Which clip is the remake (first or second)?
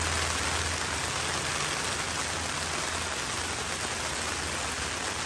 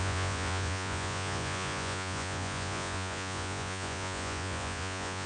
second